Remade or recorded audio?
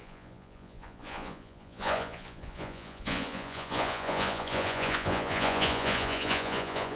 remade